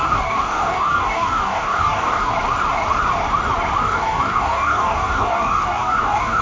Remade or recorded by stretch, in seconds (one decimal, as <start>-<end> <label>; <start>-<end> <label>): 0.0-2.3 remade; 2.3-3.8 recorded; 3.8-6.4 remade